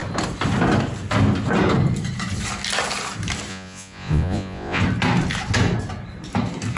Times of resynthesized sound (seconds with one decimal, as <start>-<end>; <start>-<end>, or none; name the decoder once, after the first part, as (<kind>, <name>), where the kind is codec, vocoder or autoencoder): 3.5-4.8 (vocoder, Vocos)